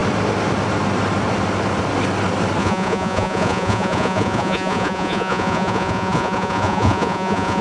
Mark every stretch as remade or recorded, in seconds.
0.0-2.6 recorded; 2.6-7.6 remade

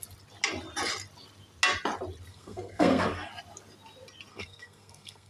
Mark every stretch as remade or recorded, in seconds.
0.0-2.3 recorded; 2.3-3.3 remade; 3.3-4.3 recorded; 4.3-5.3 remade

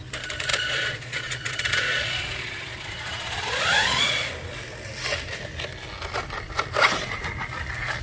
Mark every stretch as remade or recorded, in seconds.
0.0-0.5 recorded; 0.5-4.3 remade; 4.3-8.0 recorded